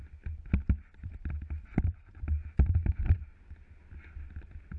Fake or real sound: real